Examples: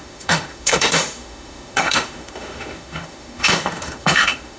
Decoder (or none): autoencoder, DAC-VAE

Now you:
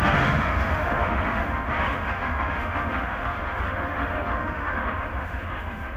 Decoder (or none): autoencoder, DAC-VAE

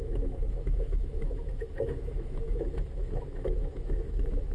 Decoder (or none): autoencoder, DAC-VAE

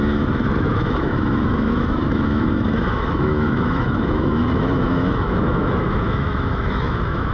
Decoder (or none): autoencoder, DAC-VAE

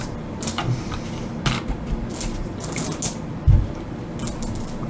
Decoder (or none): none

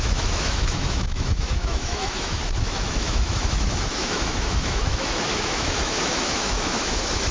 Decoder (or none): autoencoder, DAC-VAE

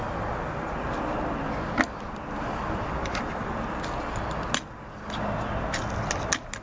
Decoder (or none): none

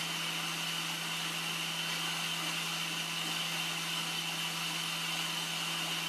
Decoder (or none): none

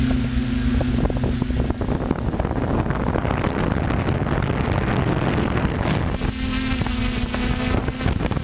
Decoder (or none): none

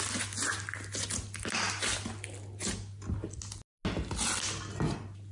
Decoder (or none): none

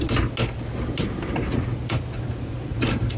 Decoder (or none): none